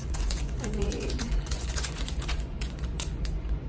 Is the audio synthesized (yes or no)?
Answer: yes